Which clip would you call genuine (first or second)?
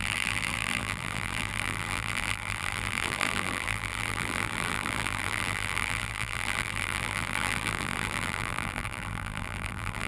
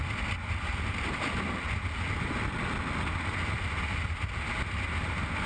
second